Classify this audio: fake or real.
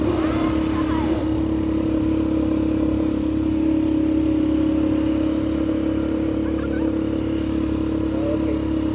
real